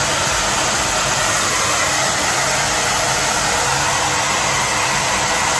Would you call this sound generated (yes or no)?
no